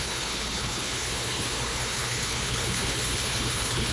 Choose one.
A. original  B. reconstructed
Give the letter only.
B